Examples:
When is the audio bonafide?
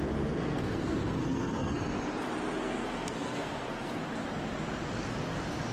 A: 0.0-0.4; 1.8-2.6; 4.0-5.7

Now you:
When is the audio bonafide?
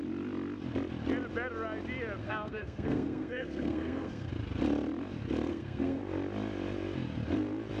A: 0.0-2.2; 4.3-5.5; 6.0-7.8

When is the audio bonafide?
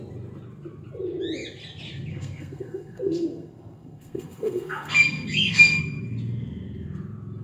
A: 0.0-2.1; 5.8-7.4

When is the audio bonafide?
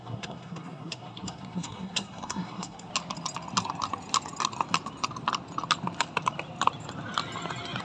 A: 2.9-7.8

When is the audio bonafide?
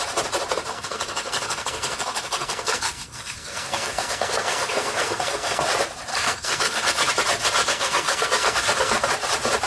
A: 0.0-0.7; 5.6-6.1; 7.1-7.6; 9.0-9.7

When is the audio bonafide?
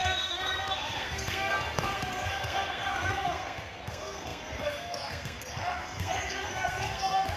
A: none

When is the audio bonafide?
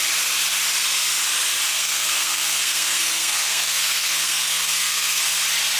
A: 0.0-1.7; 5.2-5.8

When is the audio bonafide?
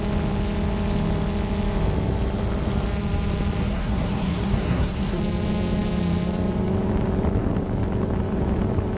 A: 0.0-3.6; 5.2-9.0